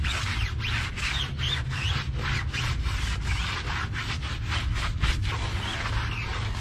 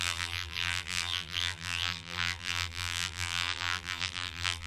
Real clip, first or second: first